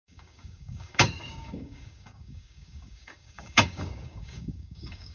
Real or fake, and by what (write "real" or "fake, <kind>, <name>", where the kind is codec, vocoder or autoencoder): fake, codec, DAC